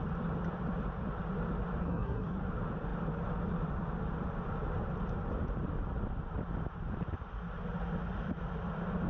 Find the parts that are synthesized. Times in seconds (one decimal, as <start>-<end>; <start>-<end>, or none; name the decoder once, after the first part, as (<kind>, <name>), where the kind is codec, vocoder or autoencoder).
1.8-2.4 (codec, SNAC)